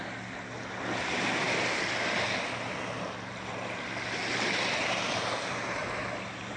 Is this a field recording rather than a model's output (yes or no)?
yes